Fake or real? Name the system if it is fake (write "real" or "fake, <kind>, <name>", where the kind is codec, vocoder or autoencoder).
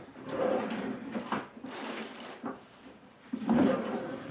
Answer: fake, vocoder, BigVGAN v2